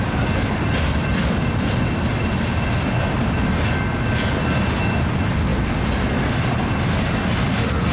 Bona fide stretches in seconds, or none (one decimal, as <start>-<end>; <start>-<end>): 0.0-7.9